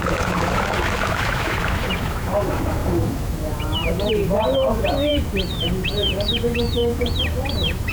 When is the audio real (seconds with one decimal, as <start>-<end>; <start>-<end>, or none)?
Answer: none